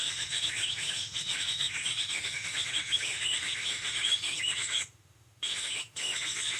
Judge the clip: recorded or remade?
remade